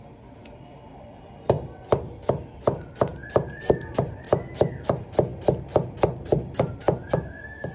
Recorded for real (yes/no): yes